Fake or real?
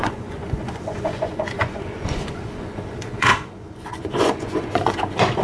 fake